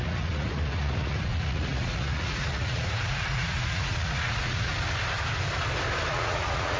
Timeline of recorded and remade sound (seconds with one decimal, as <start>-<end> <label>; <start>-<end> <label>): 0.0-4.7 remade; 4.7-6.1 recorded; 6.1-6.8 remade